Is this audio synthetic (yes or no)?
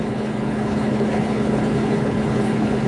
yes